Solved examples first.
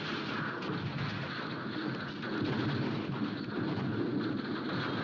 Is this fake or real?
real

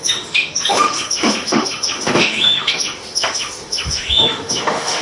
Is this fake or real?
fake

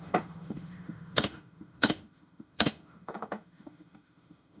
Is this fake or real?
fake